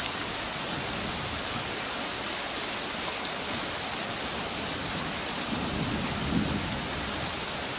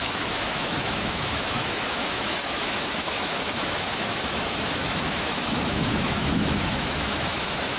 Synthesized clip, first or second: second